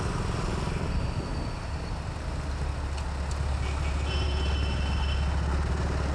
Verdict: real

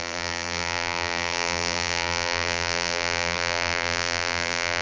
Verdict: fake